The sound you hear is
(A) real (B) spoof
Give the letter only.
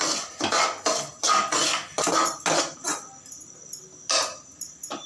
A